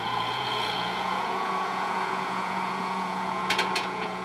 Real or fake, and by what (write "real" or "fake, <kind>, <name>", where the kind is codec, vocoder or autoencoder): fake, vocoder, Vocos